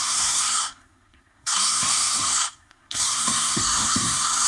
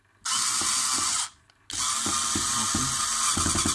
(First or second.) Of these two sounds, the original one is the second